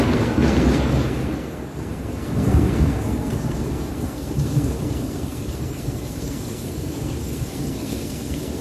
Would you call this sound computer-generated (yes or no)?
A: yes